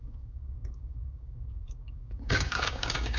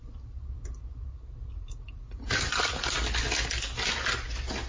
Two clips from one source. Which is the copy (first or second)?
first